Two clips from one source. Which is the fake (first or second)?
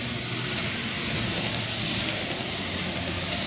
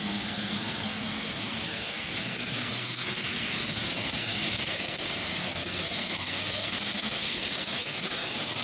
second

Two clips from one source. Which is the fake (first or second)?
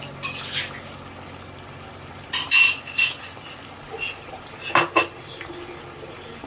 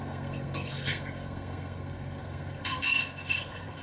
second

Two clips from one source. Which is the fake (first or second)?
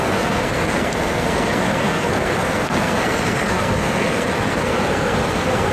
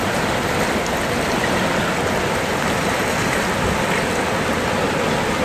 first